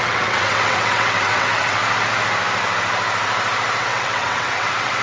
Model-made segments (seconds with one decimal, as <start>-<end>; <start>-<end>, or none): 0.0-1.8; 3.8-5.0